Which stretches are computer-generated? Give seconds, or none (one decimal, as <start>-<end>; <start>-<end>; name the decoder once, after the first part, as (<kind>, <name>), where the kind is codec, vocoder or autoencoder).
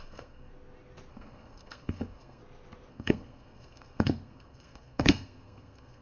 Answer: 0.0-0.5 (codec, SNAC); 1.1-2.4; 2.9-6.0